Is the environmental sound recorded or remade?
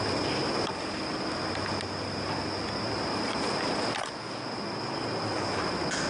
recorded